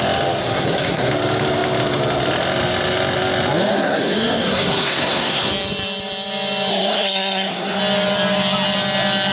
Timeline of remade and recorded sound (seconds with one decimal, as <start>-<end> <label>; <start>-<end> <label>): 0.0-0.4 recorded; 0.4-1.1 remade; 1.1-3.7 recorded; 3.7-5.5 remade; 5.5-6.7 recorded; 6.7-7.8 remade; 7.8-9.3 recorded